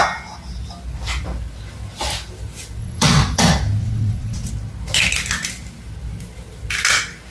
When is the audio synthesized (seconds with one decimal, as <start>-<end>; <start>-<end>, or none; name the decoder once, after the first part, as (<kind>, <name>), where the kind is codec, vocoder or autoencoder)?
2.8-3.4 (vocoder, WaveNeXt); 3.8-4.5